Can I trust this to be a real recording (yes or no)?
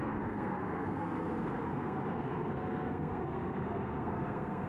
no